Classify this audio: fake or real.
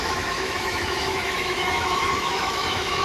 fake